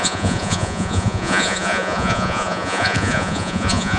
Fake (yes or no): yes